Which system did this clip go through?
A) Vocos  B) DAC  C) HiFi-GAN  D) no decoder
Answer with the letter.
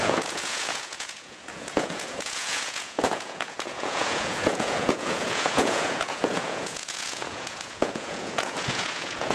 A